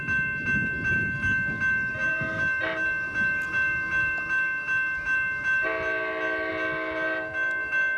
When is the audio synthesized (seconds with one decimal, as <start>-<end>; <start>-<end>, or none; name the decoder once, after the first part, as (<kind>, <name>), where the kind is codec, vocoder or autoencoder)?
none